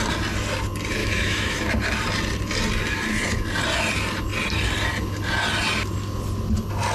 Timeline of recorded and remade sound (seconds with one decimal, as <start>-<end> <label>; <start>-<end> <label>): 0.0-1.0 recorded; 1.0-1.7 remade; 1.7-6.9 recorded